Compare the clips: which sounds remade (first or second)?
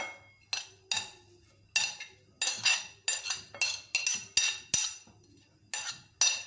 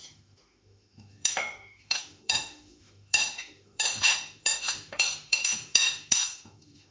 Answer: second